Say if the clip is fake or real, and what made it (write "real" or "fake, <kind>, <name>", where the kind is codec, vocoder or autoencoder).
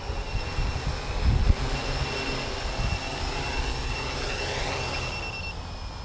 real